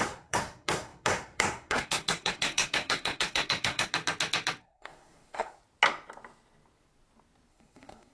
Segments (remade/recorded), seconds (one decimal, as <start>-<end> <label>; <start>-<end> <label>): 0.0-3.9 remade; 3.9-4.6 recorded; 4.6-5.6 remade; 5.6-7.5 recorded; 7.5-8.1 remade